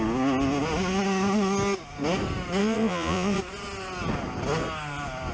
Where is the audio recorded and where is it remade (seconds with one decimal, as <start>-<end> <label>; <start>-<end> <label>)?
0.0-2.6 recorded; 2.6-3.4 remade; 3.4-5.3 recorded

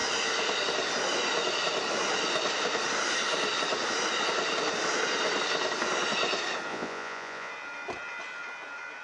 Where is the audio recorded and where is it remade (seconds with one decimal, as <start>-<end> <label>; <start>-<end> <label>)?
0.0-6.7 recorded; 6.7-7.5 remade; 7.5-9.0 recorded

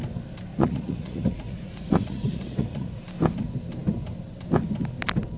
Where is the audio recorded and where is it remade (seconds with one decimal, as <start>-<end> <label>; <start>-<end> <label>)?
0.0-0.5 recorded; 0.5-3.0 remade; 3.0-5.4 recorded